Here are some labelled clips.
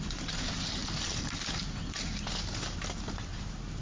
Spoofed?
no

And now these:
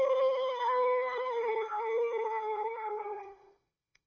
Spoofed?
yes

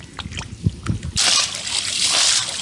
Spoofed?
no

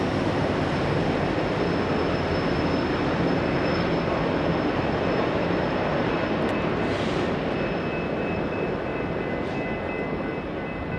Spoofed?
no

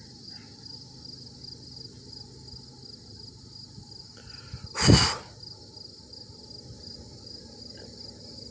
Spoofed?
no